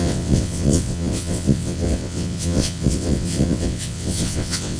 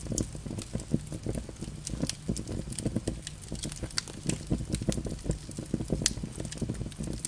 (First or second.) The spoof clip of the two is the first